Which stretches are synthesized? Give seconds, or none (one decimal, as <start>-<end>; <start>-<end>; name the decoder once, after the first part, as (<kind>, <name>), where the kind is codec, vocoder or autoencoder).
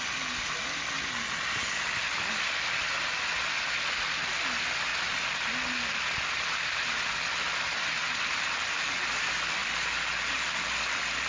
none